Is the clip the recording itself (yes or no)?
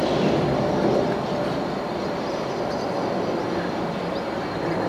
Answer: yes